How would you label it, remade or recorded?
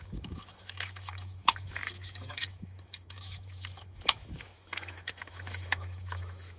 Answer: remade